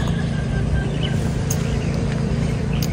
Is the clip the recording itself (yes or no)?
no